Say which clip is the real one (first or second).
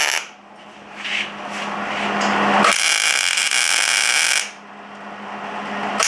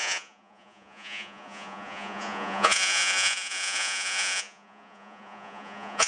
first